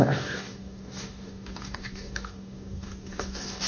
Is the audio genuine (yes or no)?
no